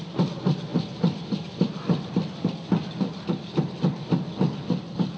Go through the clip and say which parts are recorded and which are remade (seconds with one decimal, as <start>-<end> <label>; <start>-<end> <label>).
0.0-0.7 recorded; 0.7-3.8 remade; 3.8-5.2 recorded